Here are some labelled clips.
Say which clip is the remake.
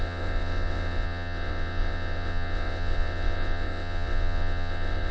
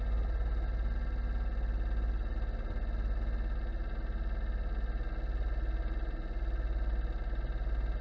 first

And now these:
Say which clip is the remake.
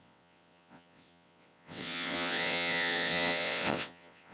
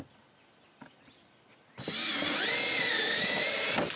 first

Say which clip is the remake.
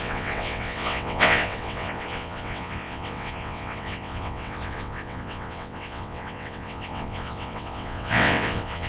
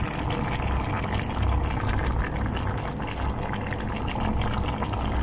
first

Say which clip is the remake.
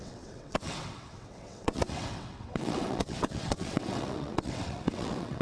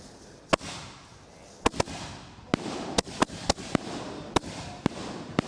first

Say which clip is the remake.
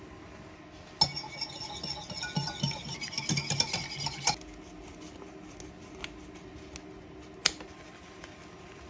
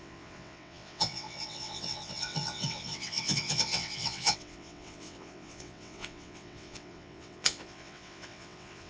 second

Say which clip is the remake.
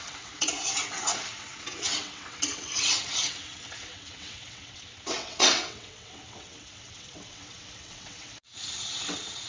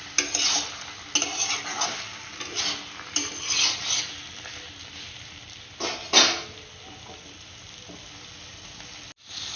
first